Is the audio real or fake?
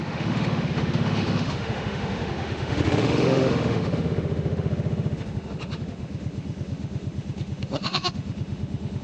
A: fake